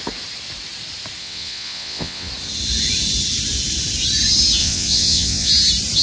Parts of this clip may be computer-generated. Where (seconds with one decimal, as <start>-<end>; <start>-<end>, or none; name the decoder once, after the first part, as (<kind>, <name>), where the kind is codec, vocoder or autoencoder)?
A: 1.2-2.3 (vocoder, WaveNeXt); 4.6-5.5